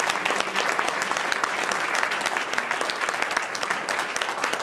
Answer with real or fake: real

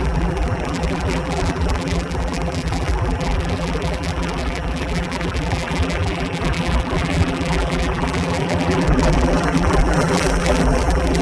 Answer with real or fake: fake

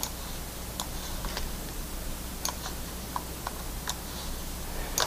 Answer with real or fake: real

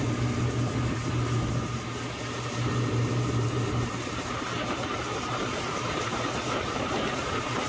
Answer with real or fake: fake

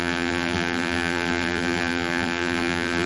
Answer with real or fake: fake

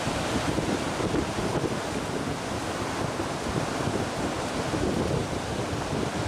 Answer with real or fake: real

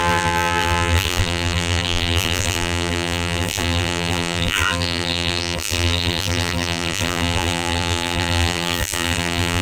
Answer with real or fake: fake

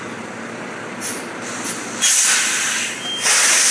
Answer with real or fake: fake